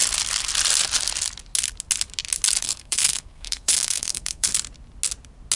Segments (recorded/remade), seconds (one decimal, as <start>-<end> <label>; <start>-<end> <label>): 0.0-2.6 recorded; 2.6-4.5 remade; 4.5-5.6 recorded